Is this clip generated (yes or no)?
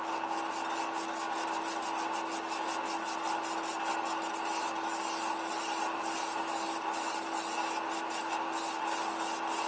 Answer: no